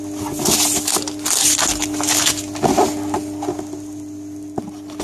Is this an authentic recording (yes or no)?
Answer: yes